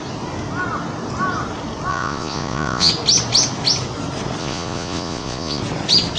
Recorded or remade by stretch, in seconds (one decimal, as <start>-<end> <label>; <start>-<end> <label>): 0.0-1.9 recorded; 1.9-2.9 remade; 2.9-4.4 recorded; 4.4-5.6 remade; 5.6-6.2 recorded